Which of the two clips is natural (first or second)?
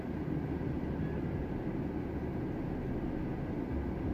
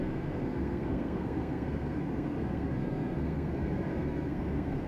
first